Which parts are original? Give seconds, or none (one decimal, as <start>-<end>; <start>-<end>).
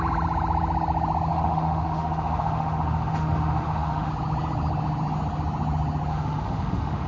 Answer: 0.0-1.3; 4.1-6.1